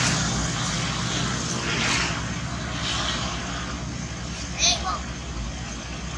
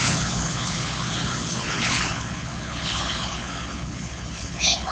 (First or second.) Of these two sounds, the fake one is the second